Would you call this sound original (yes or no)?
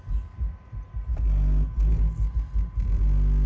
yes